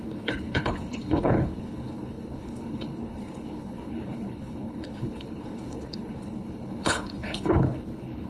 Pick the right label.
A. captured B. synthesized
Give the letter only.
B